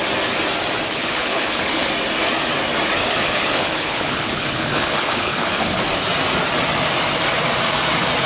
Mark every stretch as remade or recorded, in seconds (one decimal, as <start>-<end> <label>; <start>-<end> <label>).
0.0-0.9 recorded; 0.9-1.9 remade; 1.9-3.0 recorded; 3.0-5.8 remade; 5.8-8.3 recorded